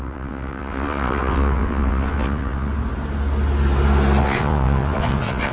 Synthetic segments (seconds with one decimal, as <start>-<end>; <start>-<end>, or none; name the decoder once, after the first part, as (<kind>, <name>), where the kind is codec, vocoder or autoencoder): 0.0-2.7 (vocoder, WaveNeXt); 4.2-5.5